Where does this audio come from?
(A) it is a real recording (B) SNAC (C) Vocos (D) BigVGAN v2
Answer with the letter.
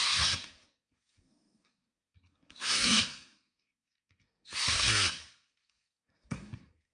B